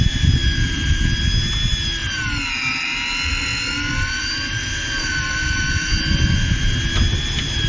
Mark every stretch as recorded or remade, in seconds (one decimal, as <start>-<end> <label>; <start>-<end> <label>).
0.0-7.7 recorded